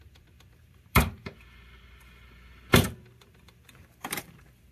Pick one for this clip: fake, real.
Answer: fake